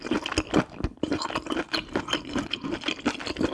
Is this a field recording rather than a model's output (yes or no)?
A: yes